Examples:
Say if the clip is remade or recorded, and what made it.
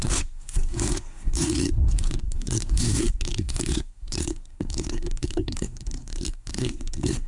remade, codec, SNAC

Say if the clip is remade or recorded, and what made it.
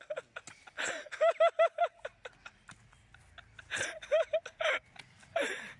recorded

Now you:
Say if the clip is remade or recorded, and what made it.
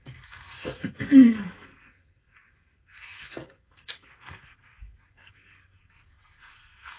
remade, codec, SNAC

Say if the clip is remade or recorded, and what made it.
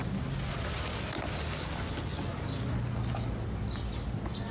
recorded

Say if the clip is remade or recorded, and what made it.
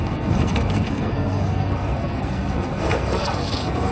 remade, codec, SNAC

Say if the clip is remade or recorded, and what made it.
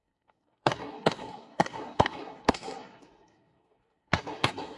remade, codec, SNAC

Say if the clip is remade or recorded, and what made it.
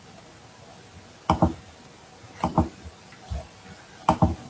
recorded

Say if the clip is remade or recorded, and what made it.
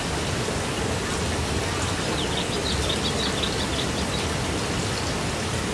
recorded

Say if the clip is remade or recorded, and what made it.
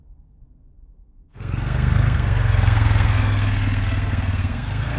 remade, codec, SNAC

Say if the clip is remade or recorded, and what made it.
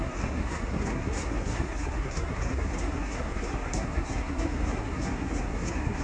remade, codec, SNAC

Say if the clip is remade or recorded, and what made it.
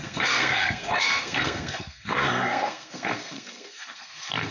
remade, codec, SNAC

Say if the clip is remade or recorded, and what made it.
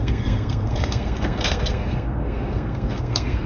remade, codec, SNAC